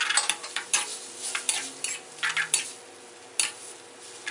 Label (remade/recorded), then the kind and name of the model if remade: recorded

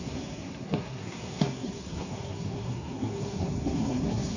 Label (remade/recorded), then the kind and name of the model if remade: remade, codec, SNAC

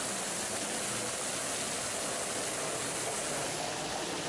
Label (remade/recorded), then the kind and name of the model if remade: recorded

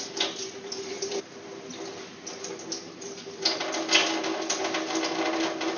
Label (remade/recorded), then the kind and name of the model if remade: recorded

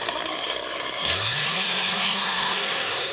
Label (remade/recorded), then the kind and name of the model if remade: remade, codec, SNAC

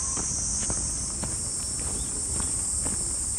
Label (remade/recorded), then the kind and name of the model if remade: recorded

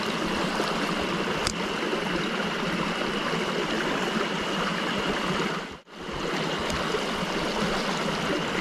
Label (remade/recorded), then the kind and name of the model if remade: recorded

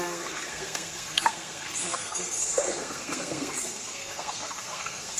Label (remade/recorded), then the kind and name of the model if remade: remade, codec, SNAC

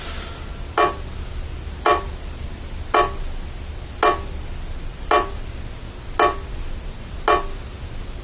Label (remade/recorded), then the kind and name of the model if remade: recorded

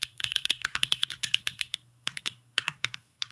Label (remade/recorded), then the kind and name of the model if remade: remade, codec, SNAC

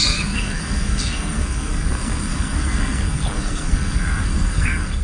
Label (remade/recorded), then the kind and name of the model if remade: remade, codec, SNAC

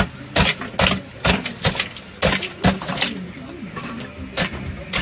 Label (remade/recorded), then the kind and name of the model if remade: recorded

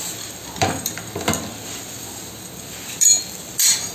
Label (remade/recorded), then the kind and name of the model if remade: recorded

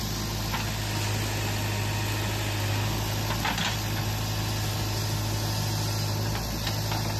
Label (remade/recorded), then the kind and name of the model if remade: recorded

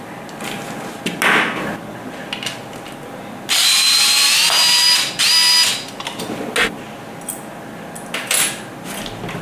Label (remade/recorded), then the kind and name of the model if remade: recorded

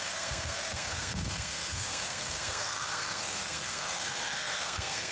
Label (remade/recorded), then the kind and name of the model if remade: remade, codec, SNAC